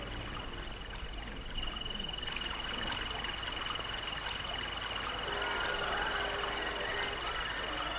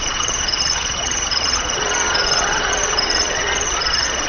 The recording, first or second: first